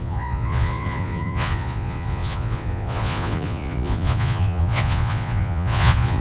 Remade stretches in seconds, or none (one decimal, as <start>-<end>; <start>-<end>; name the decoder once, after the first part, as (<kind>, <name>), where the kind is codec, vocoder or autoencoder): 0.0-6.2 (vocoder, Vocos)

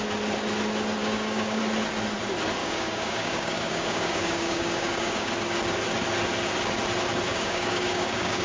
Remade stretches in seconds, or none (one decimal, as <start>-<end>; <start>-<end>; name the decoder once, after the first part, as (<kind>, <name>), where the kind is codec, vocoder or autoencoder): 1.0-1.6 (codec, DAC); 2.6-5.3; 7.3-8.4

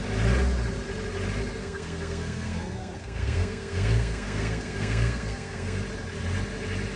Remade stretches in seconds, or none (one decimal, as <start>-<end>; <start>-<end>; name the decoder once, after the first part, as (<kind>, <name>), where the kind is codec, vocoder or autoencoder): 1.6-5.8 (codec, SNAC)

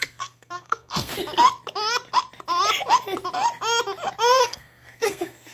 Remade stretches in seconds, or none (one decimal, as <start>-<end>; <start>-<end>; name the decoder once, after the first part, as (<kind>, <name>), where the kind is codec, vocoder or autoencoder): 0.0-1.1 (codec, SNAC); 4.4-5.5